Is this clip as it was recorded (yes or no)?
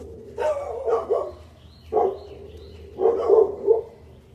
yes